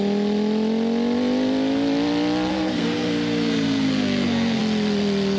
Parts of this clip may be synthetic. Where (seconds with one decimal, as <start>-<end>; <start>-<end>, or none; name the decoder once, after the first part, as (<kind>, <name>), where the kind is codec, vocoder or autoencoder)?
2.5-4.6 (codec, SNAC)